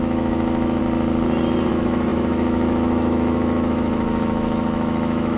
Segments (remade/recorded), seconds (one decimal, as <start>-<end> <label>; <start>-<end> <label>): 0.0-0.8 remade; 0.8-1.7 recorded; 1.7-5.4 remade